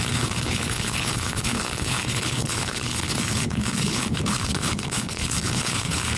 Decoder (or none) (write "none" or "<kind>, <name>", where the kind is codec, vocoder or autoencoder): codec, HILCodec